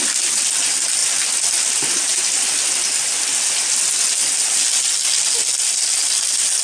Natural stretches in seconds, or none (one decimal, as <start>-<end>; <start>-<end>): 0.0-6.6